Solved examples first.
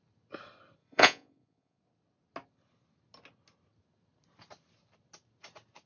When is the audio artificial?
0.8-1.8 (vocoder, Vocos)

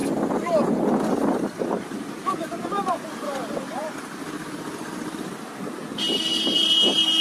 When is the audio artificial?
none

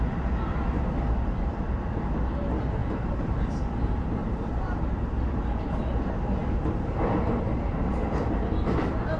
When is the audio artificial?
2.8-3.6 (vocoder, BigVGAN v2); 4.2-5.0